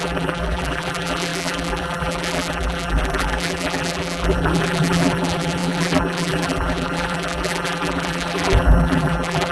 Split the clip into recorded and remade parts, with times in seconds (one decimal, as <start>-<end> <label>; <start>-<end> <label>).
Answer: 0.0-9.5 remade